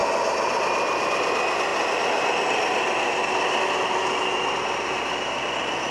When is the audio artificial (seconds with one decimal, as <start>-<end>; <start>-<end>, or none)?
none

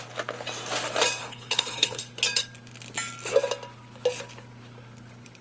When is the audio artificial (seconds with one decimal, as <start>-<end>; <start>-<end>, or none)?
1.2-2.0

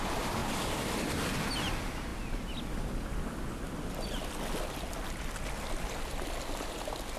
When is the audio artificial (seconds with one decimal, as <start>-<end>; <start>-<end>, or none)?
none

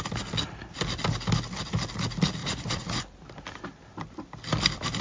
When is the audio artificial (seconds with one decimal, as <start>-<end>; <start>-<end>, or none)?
2.4-3.0

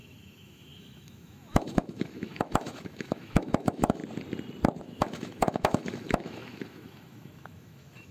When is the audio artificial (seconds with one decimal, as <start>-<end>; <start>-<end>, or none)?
0.0-4.0; 4.8-8.1

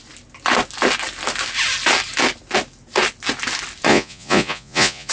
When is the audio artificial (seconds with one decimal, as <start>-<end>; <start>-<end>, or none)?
3.9-5.1

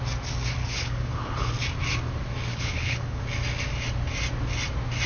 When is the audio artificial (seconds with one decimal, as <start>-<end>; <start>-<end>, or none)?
0.6-1.5; 2.5-3.2